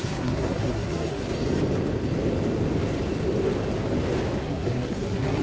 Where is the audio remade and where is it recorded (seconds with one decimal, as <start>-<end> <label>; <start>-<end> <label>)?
0.0-1.2 remade; 1.2-4.4 recorded; 4.4-5.4 remade